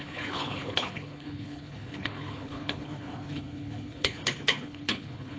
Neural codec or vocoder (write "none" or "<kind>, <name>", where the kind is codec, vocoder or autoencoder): codec, HILCodec